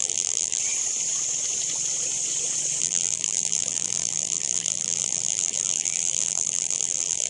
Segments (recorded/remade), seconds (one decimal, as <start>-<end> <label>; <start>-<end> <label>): 0.0-0.6 remade; 0.6-2.8 recorded; 2.8-7.3 remade